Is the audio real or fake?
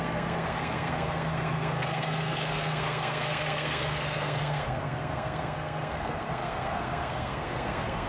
fake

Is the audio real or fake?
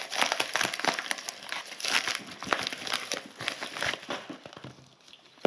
real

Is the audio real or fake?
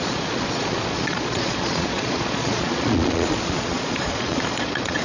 fake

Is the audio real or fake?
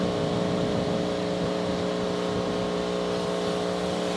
real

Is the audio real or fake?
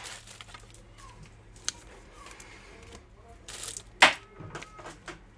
real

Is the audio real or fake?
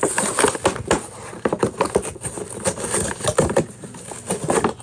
real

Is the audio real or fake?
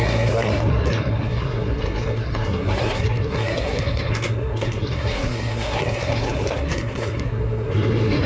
fake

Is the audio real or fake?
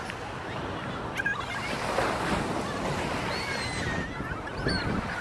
real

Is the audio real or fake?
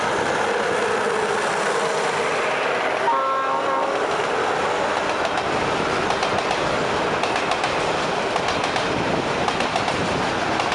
real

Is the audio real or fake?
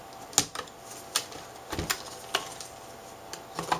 real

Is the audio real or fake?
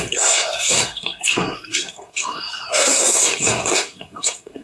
fake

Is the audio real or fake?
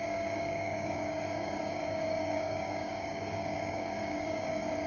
fake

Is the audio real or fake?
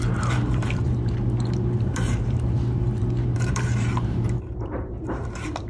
fake